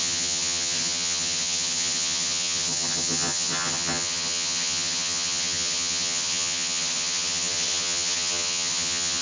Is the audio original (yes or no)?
no